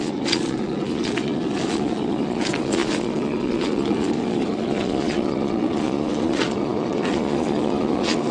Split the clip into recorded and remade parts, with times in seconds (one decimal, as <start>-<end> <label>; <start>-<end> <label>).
0.0-8.3 remade